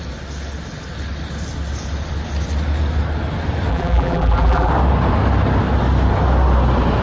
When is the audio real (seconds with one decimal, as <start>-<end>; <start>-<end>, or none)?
0.0-3.7; 4.7-7.0

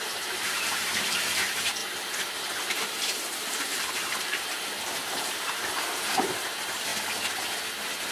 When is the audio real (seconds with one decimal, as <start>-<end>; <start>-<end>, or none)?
1.8-2.6; 6.9-8.1